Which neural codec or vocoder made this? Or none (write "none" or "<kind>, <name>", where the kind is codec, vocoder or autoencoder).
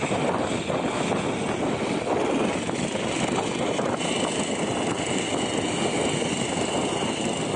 none